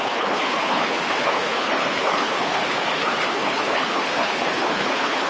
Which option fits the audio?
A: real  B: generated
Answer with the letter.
B